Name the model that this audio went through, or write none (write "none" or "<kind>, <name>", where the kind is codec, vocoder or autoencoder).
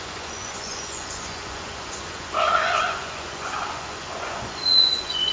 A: vocoder, Vocos